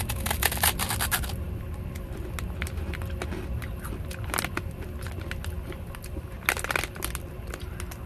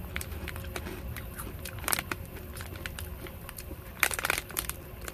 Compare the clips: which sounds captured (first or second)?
first